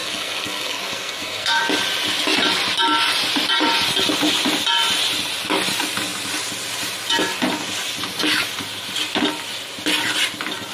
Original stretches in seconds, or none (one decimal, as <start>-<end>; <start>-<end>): 1.6-10.7